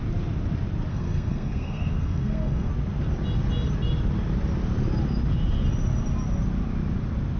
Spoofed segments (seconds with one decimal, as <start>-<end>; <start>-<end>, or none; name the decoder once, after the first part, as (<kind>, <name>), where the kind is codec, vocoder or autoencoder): 0.9-2.7 (codec, SNAC)